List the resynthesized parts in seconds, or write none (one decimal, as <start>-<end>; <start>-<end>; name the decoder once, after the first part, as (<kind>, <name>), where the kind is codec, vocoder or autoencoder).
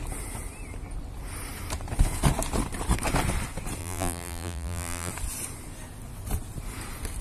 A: 3.8-5.1 (vocoder, BigVGAN v2)